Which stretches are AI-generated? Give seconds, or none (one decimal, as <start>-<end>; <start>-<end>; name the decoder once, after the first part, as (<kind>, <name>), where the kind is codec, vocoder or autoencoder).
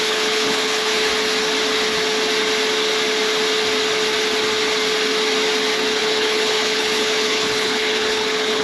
0.0-1.1 (codec, HILCodec); 6.0-8.6